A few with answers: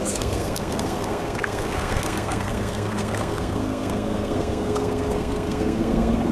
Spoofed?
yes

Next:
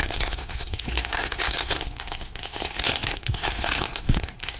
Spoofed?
yes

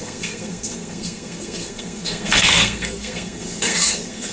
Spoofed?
yes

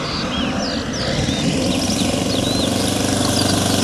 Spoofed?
no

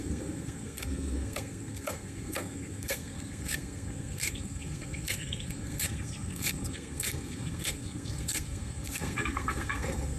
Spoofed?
yes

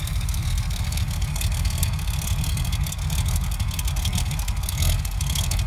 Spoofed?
yes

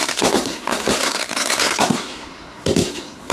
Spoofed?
yes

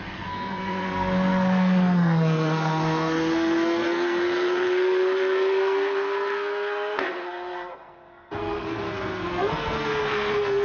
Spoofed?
yes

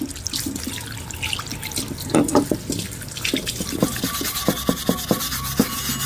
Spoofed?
no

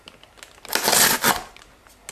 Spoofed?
no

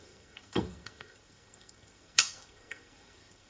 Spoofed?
yes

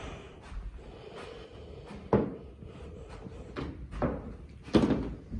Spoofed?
no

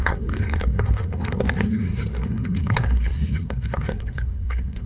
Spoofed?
yes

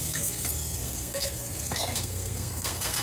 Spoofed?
yes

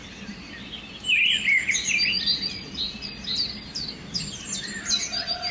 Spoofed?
no